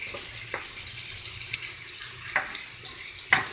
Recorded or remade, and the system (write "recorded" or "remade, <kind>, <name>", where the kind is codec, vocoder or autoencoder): recorded